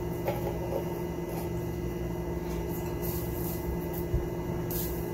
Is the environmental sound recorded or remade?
recorded